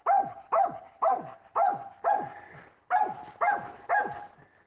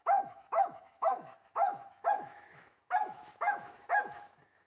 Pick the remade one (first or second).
second